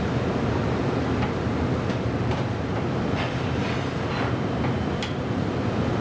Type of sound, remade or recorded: recorded